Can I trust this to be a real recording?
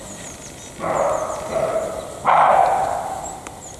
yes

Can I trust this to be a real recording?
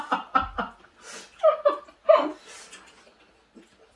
yes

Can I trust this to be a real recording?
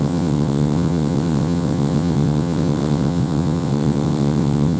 no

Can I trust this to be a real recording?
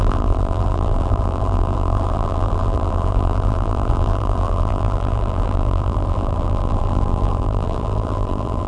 no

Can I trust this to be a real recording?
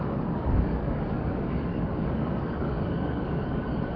no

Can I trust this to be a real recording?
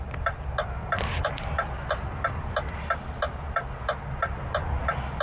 yes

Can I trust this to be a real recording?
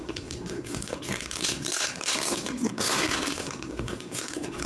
no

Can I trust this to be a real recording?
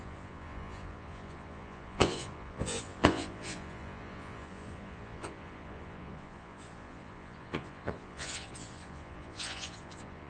no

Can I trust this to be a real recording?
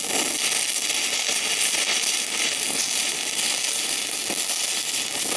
yes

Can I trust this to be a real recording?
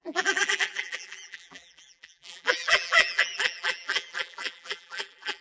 no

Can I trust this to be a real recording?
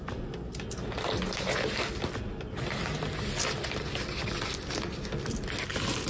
yes